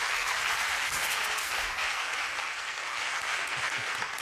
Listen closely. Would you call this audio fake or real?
fake